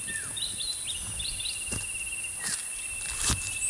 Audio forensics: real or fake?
real